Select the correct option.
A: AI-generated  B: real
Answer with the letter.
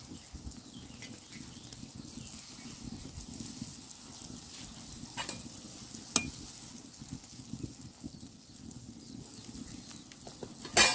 B